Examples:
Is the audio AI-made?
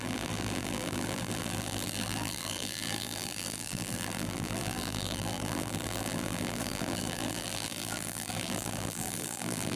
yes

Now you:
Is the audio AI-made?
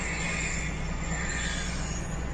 yes